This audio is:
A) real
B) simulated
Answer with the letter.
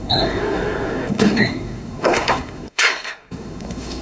B